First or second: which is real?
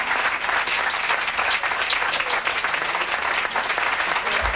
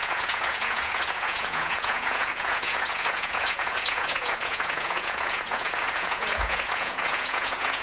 first